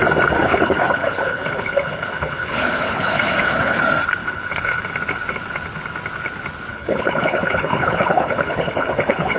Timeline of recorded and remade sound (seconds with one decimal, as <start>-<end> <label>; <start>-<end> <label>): 0.0-0.4 recorded; 0.4-3.8 remade; 3.8-4.2 recorded; 4.2-4.9 remade; 4.9-6.7 recorded; 6.7-9.4 remade